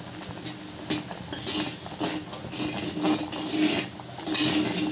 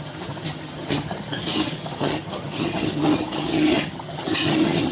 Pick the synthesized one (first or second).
second